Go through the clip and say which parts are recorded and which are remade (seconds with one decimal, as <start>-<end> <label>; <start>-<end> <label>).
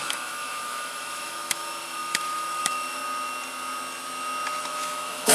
0.0-3.0 remade; 3.0-4.6 recorded; 4.6-5.3 remade